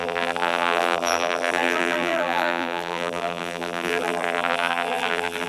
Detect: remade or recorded remade